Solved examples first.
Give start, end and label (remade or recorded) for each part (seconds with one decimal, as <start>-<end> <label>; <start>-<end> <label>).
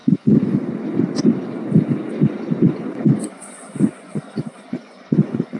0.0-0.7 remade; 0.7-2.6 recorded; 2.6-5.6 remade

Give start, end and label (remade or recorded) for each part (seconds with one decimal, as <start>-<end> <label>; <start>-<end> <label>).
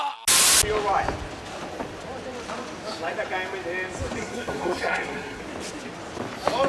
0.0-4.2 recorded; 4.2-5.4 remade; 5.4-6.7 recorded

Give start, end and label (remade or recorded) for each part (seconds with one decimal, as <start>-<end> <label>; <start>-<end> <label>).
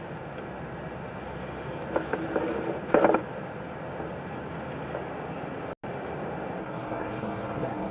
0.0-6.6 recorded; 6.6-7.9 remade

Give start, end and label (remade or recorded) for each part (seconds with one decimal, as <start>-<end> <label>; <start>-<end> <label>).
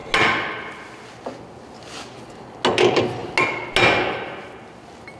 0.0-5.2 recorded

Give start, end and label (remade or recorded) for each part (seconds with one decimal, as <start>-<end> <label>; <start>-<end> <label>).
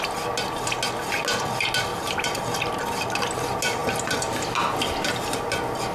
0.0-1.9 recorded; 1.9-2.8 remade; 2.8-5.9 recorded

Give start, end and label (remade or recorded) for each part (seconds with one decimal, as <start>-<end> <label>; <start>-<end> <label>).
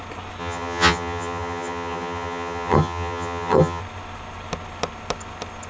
0.0-0.4 recorded; 0.4-3.8 remade; 3.8-5.7 recorded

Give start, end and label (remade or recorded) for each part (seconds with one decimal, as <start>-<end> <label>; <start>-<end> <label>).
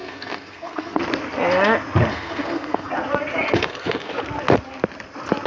0.0-1.0 remade; 1.0-2.1 recorded; 2.1-2.9 remade; 2.9-3.4 recorded; 3.4-4.1 remade; 4.1-5.5 recorded